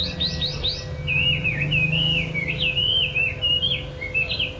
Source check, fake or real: real